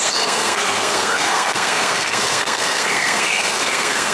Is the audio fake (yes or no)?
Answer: yes